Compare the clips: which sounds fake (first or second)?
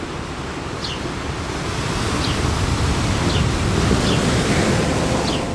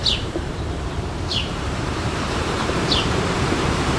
second